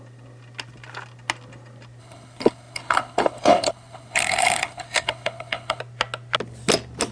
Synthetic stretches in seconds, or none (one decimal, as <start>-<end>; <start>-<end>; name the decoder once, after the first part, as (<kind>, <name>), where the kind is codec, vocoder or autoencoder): 2.0-5.8 (codec, HILCodec)